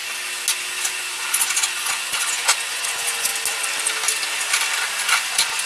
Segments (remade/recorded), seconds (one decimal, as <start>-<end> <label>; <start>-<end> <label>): 0.0-0.6 recorded; 0.6-3.3 remade; 3.3-5.0 recorded; 5.0-5.7 remade